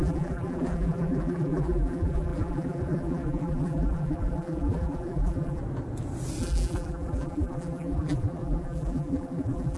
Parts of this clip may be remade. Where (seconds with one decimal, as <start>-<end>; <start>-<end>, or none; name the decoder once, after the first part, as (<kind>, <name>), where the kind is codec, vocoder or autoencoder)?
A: 0.0-5.6 (vocoder, BigVGAN v2); 6.4-9.8